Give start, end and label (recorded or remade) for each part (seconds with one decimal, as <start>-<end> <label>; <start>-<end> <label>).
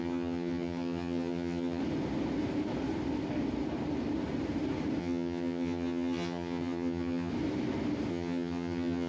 0.0-1.8 remade; 1.8-5.0 recorded; 5.0-7.3 remade; 7.3-8.1 recorded; 8.1-9.1 remade